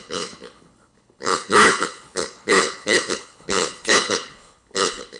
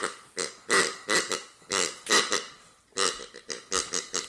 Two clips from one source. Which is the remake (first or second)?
first